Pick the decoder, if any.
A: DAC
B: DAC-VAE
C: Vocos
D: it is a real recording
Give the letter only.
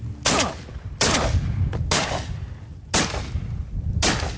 D